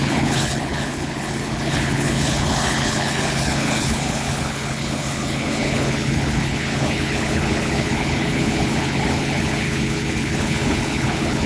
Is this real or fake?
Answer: fake